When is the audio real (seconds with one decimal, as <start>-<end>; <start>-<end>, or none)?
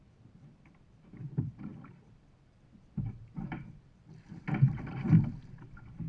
none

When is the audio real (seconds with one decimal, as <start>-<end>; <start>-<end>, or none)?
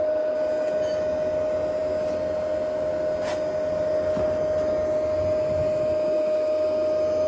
0.0-7.3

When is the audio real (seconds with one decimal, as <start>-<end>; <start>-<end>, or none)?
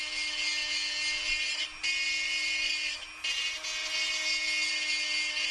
0.0-5.5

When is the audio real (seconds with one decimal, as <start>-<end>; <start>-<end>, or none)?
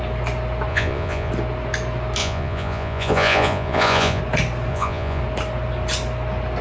0.0-0.7; 1.3-2.2; 4.2-4.7; 5.2-6.6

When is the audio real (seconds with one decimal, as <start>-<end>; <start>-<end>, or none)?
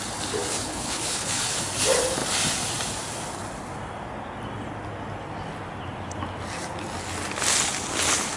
0.0-0.5; 1.6-8.4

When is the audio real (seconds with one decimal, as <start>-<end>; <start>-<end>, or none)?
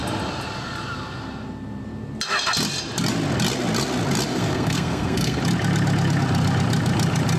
0.0-4.3; 5.4-7.4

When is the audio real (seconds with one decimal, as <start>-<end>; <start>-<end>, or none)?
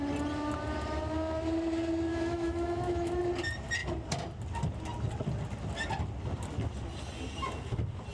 0.0-2.1; 3.2-8.1